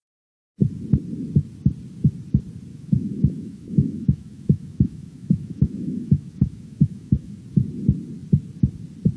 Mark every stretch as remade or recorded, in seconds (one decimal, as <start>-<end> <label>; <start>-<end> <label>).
0.0-2.7 recorded; 2.7-7.4 remade; 7.4-9.2 recorded